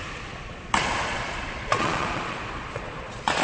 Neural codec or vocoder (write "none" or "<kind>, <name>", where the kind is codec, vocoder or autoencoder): vocoder, Vocos